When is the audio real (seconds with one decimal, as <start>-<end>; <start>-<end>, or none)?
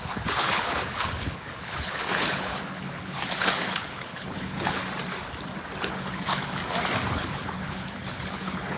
4.8-5.8; 6.6-7.1